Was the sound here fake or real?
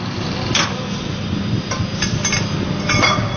real